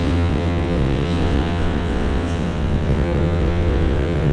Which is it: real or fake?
fake